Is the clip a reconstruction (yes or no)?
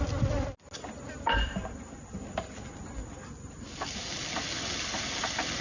no